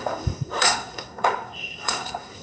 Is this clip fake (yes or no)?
yes